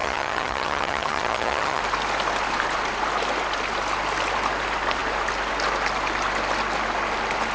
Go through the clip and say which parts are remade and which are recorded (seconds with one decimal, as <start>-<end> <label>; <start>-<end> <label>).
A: 0.0-1.8 remade; 1.8-7.5 recorded